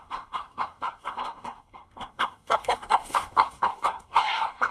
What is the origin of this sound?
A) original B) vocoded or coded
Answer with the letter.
B